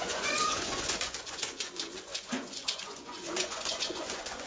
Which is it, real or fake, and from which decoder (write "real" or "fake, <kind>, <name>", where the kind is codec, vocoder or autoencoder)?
fake, vocoder, Vocos